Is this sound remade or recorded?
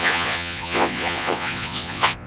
remade